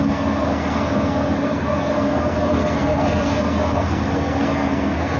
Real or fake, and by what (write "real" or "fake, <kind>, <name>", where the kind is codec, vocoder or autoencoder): fake, codec, SNAC